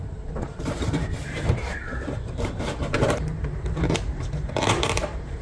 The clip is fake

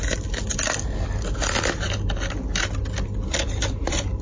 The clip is real